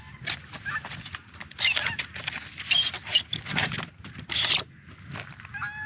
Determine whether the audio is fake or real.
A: real